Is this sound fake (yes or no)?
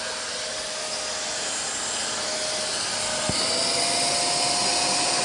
no